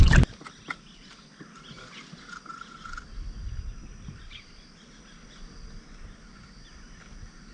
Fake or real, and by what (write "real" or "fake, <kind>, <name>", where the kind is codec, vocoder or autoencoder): real